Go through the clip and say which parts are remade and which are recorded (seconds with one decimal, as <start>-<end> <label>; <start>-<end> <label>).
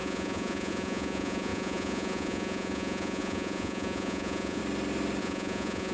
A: 0.0-4.6 remade; 4.6-5.2 recorded; 5.2-5.9 remade